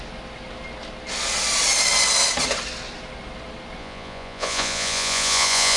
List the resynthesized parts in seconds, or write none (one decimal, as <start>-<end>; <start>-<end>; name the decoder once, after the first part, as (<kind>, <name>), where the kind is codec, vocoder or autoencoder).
3.8-5.8 (vocoder, Vocos)